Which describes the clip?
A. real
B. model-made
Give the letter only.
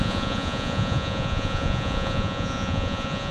B